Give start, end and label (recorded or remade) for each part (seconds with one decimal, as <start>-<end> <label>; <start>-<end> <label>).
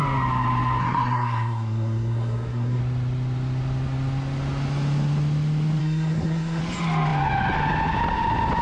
0.0-0.8 recorded; 0.8-2.8 remade; 2.8-5.8 recorded; 5.8-6.6 remade; 6.6-8.6 recorded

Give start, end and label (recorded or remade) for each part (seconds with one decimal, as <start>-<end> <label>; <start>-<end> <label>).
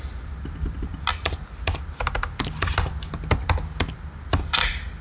0.0-5.0 recorded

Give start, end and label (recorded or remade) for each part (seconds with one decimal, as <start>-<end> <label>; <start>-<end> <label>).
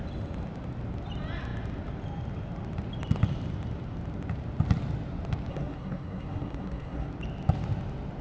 0.0-5.5 recorded; 5.5-7.1 remade; 7.1-8.2 recorded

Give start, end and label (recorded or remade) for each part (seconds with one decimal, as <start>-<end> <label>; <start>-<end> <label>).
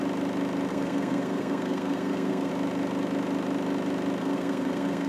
0.0-0.7 recorded; 0.7-2.5 remade; 2.5-4.2 recorded; 4.2-5.1 remade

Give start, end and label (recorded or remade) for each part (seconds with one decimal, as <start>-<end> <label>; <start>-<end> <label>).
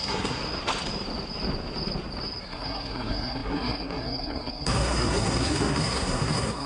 0.0-0.4 remade; 0.4-2.4 recorded; 2.4-6.7 remade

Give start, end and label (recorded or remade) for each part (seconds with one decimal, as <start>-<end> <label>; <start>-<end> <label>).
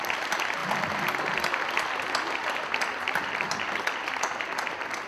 0.0-5.1 recorded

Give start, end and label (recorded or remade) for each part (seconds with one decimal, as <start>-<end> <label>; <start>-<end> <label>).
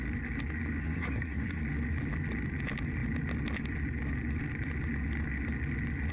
0.0-0.8 recorded; 0.8-1.6 remade; 1.6-6.1 recorded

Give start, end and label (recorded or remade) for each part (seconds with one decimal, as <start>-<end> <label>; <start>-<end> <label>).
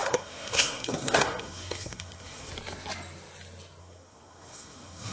0.0-2.5 remade; 2.5-3.8 recorded; 3.8-5.1 remade